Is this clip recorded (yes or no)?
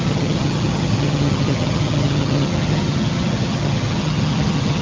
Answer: no